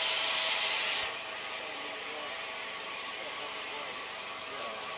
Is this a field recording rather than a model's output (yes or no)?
no